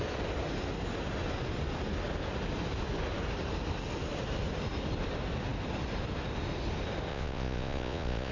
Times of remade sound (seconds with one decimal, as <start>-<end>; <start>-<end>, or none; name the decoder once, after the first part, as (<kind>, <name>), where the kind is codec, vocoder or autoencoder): 7.1-8.3 (vocoder, Vocos)